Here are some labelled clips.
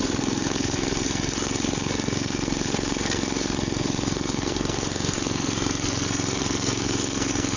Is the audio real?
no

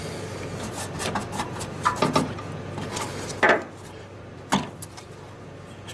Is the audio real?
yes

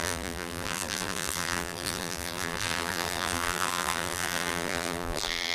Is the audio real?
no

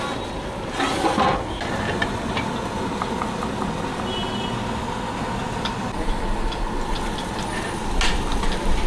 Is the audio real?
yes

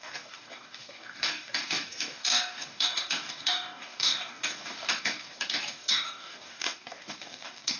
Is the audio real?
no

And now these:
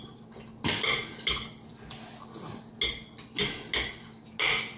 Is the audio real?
yes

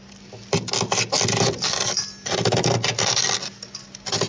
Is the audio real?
yes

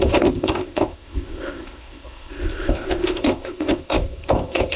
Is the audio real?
no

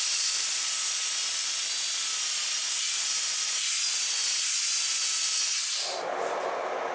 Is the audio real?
yes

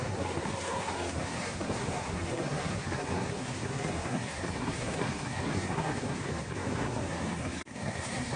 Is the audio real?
no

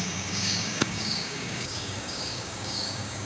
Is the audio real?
no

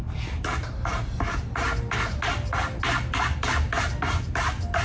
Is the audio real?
yes